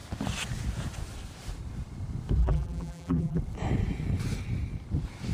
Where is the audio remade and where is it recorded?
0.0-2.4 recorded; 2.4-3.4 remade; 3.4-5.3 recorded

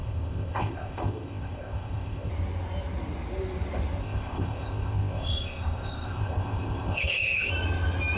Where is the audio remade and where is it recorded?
0.0-2.3 remade; 2.3-4.0 recorded; 4.0-7.5 remade; 7.5-8.2 recorded

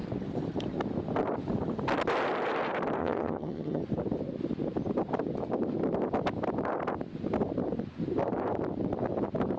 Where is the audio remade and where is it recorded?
0.0-3.0 recorded; 3.0-3.8 remade; 3.8-9.6 recorded

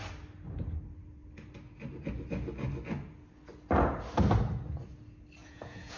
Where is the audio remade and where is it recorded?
0.0-5.4 recorded; 5.4-6.0 remade

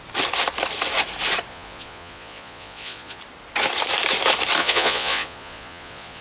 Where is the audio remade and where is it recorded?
0.0-1.5 recorded; 1.5-3.2 remade; 3.2-4.6 recorded; 4.6-6.2 remade